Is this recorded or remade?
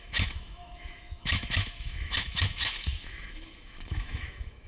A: remade